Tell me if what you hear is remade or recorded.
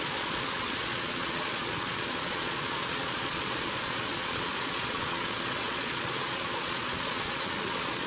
remade